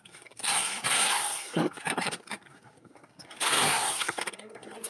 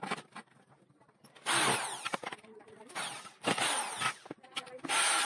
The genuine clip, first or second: second